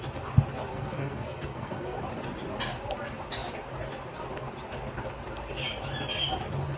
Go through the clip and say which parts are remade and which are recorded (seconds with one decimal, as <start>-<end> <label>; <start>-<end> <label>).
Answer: 0.0-0.7 recorded; 0.7-2.0 remade; 2.0-6.8 recorded